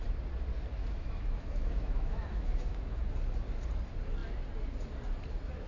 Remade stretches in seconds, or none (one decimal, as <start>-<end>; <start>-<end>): 0.8-3.1